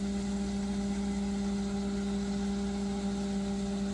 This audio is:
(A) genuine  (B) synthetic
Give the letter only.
A